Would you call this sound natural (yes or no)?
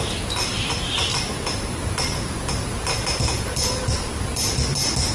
yes